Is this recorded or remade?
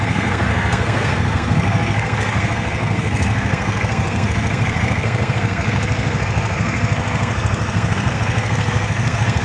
remade